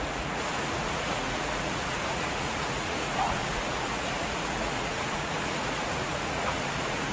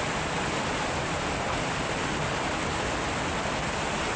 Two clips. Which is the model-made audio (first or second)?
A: first